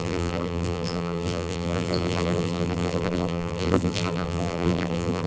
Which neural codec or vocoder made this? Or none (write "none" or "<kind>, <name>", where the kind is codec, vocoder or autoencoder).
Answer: vocoder, BigVGAN v2